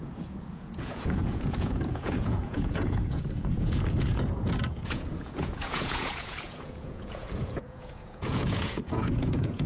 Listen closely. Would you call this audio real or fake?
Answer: fake